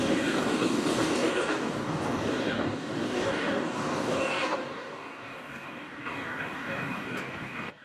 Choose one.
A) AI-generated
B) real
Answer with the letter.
A